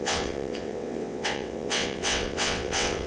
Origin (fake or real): fake